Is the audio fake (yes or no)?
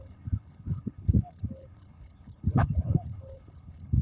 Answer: yes